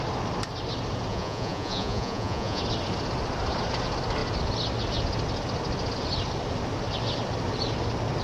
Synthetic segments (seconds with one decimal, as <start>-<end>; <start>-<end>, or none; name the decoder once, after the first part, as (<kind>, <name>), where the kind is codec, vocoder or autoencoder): 1.1-2.6 (vocoder, Vocos)